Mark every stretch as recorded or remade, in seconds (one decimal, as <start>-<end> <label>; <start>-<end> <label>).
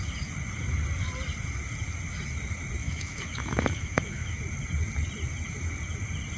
0.0-2.8 recorded; 2.8-4.4 remade; 4.4-6.4 recorded